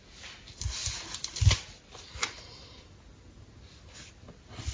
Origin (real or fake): real